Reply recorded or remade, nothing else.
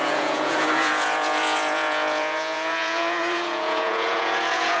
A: remade